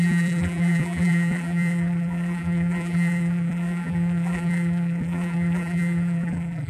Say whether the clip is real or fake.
fake